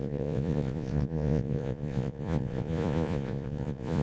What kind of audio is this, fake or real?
fake